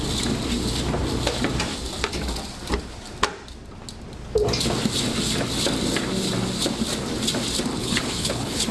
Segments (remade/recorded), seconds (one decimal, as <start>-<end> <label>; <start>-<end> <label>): 0.0-7.8 recorded; 7.8-8.7 remade